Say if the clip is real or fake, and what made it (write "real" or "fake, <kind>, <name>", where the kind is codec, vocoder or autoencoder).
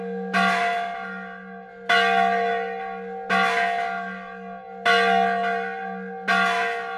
real